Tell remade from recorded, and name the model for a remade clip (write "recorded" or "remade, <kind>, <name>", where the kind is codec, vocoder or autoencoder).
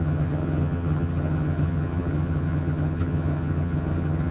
remade, vocoder, HiFi-GAN